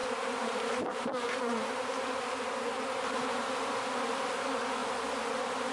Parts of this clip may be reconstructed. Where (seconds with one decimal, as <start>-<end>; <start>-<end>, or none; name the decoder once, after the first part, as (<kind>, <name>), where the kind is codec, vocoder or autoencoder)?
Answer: 0.0-3.4 (vocoder, BigVGAN v2)